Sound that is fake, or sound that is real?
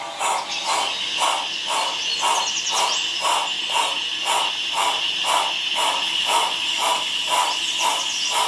real